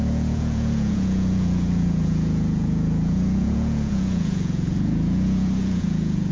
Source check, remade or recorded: remade